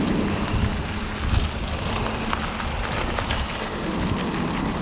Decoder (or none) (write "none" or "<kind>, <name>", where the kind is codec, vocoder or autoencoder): none